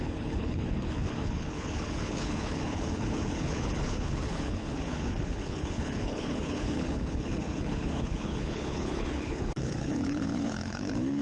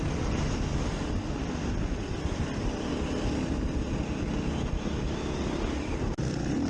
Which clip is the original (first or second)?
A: second